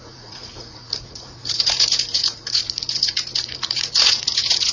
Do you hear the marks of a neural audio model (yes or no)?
yes